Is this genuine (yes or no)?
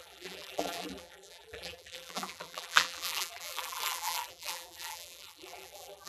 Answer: no